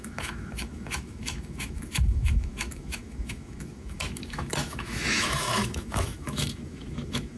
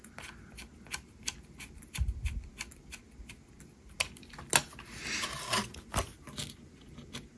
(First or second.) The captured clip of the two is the second